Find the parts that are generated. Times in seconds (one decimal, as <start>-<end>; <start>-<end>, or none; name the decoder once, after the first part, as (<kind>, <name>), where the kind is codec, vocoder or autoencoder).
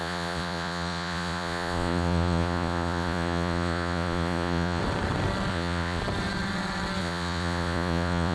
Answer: 0.0-4.8 (vocoder, Vocos); 5.5-6.0; 7.0-8.3